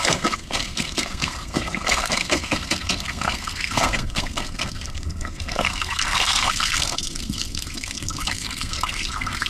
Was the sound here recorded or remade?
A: remade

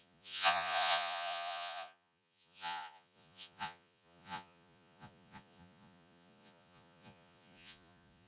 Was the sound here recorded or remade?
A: remade